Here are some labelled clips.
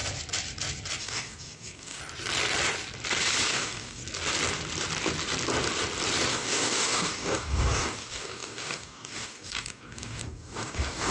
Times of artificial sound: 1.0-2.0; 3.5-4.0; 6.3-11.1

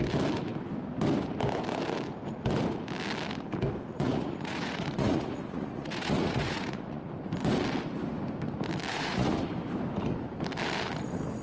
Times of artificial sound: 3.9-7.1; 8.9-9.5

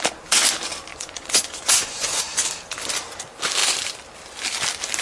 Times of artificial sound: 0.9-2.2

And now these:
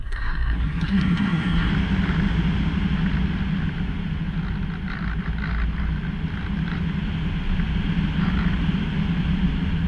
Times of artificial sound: 0.0-1.7

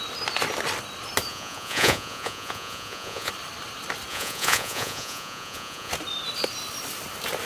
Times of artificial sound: 1.3-3.3; 4.1-5.9